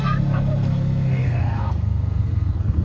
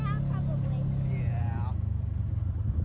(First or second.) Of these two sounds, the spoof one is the first